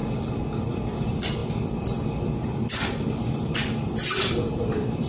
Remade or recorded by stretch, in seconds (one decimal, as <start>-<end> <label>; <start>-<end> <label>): 0.0-0.6 recorded; 0.6-5.1 remade